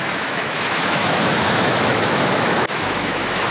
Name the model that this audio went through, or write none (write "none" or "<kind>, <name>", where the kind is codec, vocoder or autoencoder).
autoencoder, DAC-VAE